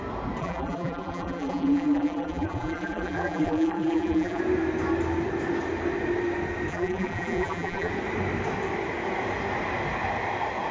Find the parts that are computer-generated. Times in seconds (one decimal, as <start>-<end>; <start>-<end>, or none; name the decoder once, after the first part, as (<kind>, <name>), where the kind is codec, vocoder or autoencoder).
0.4-4.4 (vocoder, BigVGAN v2); 6.7-7.9